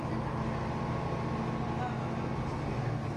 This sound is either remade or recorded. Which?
recorded